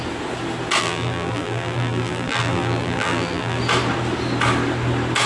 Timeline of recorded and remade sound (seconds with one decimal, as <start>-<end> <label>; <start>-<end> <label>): 0.0-0.8 recorded; 0.8-3.6 remade; 3.6-5.3 recorded